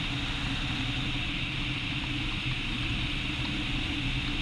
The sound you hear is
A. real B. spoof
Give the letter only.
A